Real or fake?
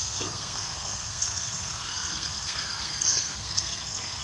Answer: fake